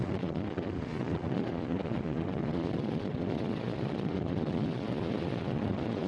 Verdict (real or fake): fake